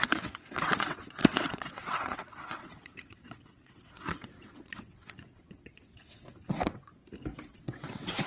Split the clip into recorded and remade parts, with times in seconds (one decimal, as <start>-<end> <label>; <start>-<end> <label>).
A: 0.0-7.0 remade; 7.0-7.6 recorded; 7.6-8.3 remade